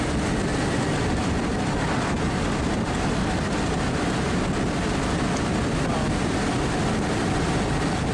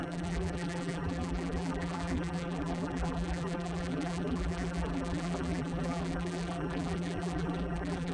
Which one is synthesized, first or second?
second